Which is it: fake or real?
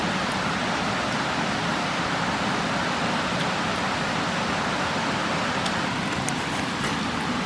real